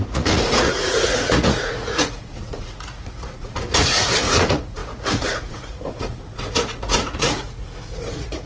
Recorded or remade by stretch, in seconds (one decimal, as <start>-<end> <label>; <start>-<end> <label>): 0.0-8.5 remade